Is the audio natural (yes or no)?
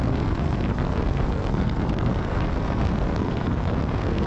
no